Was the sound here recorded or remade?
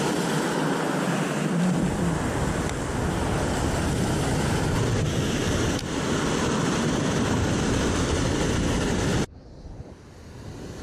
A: recorded